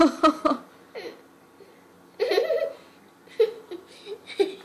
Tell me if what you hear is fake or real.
real